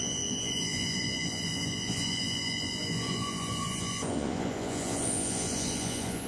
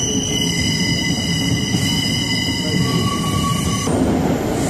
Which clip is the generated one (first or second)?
first